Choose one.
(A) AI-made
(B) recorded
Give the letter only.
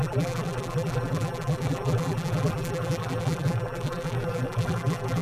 A